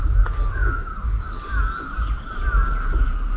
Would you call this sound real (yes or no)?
yes